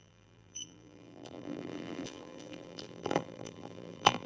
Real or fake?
fake